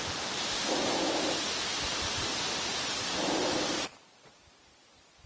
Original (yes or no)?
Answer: yes